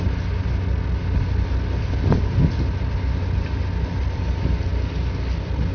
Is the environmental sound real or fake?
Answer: real